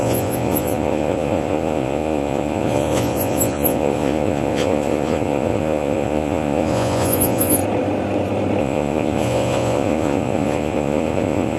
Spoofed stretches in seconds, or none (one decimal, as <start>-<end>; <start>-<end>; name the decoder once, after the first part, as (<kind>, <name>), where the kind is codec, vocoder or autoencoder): 0.0-7.6 (vocoder, Vocos); 8.6-11.6